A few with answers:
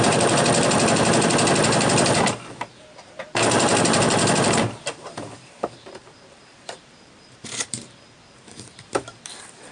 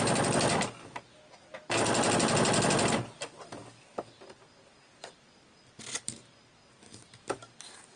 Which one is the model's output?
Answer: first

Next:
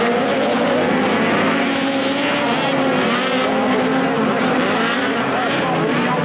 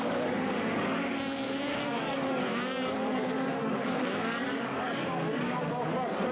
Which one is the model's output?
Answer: second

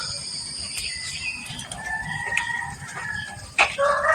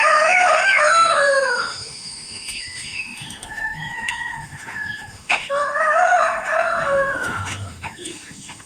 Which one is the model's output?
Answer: second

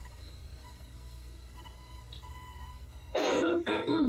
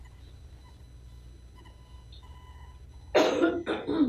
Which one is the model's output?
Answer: first